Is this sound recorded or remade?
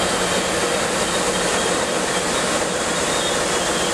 recorded